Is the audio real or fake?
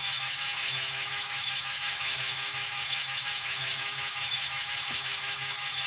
fake